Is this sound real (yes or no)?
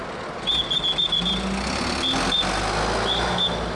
yes